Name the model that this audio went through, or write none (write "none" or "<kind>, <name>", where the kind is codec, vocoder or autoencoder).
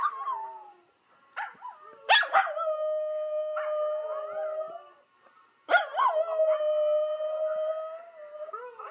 none